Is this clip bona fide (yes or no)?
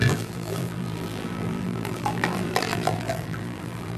no